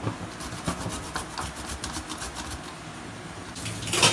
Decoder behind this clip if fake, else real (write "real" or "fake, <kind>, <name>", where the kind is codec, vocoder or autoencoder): real